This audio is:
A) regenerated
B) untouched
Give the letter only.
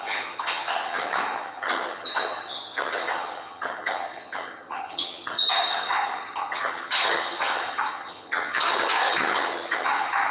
A